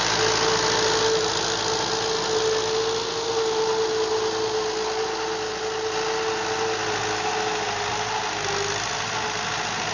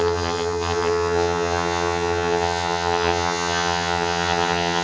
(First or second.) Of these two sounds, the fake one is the second